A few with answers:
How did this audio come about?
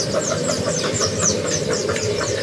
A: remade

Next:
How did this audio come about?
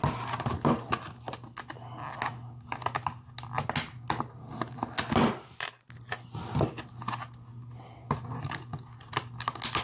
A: recorded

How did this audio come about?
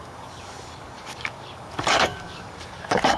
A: remade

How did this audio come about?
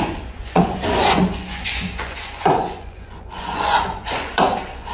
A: remade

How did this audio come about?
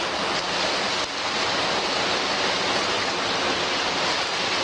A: recorded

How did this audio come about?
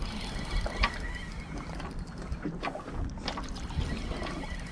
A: recorded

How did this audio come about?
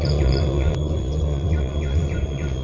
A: remade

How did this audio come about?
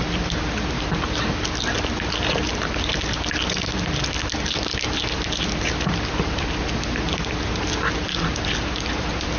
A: recorded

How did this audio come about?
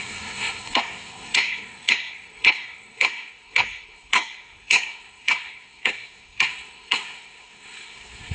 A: remade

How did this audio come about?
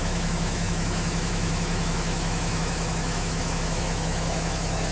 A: remade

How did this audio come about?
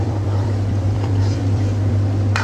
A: remade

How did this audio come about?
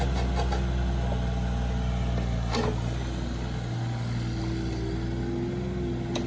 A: recorded